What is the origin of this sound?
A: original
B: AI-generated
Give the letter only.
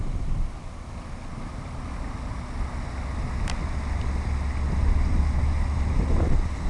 A